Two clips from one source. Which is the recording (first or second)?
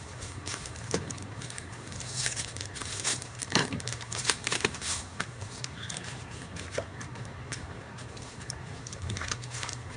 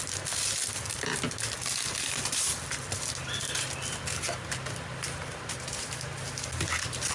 second